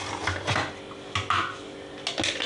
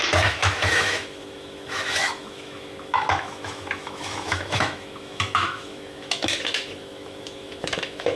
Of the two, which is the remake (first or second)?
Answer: second